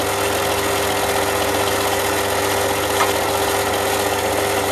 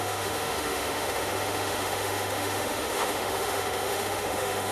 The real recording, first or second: first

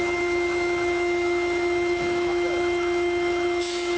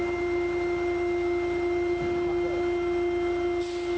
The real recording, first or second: second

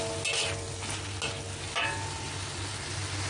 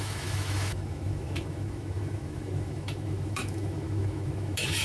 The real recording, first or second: first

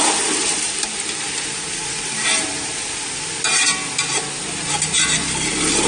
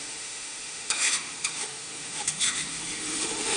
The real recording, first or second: first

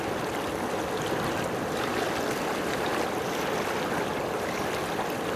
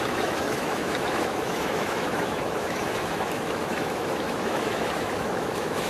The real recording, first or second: first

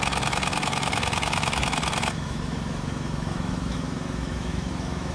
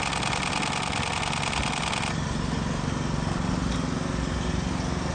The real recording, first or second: second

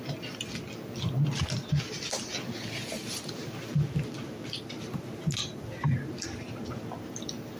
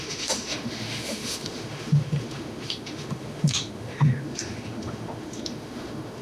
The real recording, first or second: first